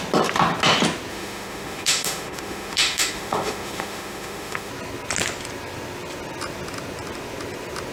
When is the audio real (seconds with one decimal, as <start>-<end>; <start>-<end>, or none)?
0.0-1.1; 4.7-7.9